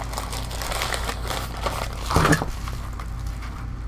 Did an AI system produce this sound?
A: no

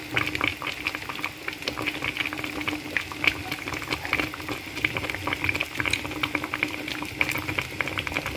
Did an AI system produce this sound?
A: no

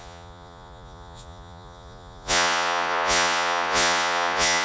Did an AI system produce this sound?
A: yes